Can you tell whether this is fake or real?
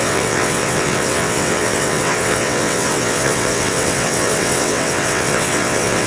fake